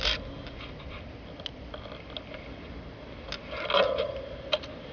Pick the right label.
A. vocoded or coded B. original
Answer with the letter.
B